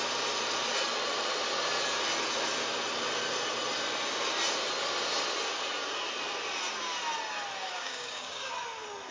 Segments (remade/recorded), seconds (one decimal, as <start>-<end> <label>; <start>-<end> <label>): 0.0-7.6 recorded; 7.6-8.5 remade; 8.5-9.1 recorded